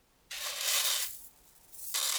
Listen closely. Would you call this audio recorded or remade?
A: recorded